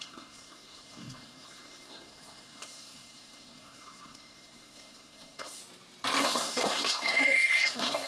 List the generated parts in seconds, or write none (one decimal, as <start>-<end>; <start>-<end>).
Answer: 0.0-5.6; 6.2-8.1